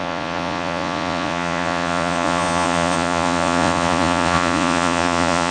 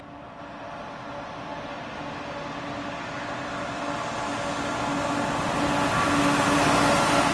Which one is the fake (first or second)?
first